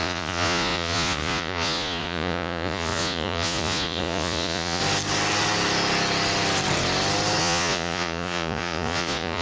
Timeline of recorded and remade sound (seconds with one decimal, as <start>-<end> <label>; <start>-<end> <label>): 0.0-4.8 remade; 4.8-7.4 recorded; 7.4-9.4 remade